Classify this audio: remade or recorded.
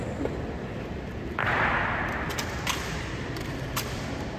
recorded